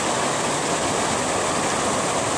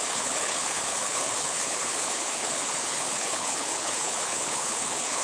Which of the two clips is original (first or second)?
first